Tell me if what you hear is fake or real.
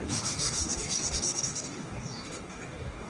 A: fake